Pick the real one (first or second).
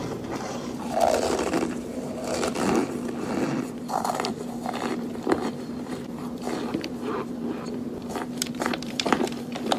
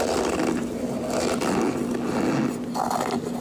second